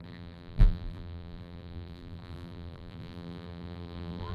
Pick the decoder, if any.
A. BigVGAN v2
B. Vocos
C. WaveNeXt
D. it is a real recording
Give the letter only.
A